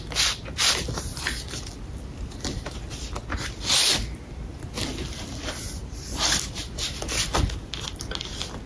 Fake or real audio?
real